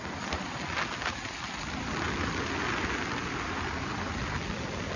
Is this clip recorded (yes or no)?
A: yes